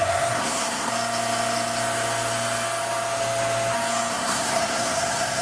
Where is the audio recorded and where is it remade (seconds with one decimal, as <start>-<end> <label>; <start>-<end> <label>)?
0.0-0.9 remade; 0.9-4.1 recorded; 4.1-5.4 remade